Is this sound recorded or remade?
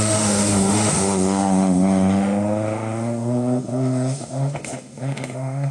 remade